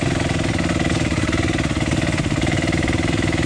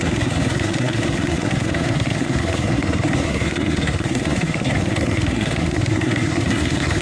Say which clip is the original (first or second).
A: first